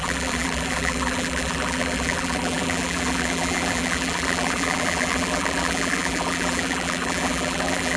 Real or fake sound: fake